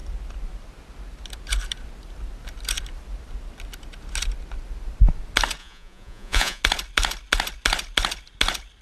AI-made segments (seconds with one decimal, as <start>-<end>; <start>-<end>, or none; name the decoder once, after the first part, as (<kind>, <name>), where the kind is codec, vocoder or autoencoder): 5.6-6.6 (vocoder, Vocos)